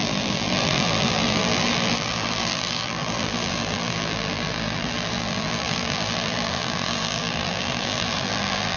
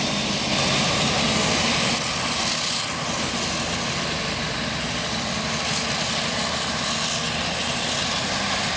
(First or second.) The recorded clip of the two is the second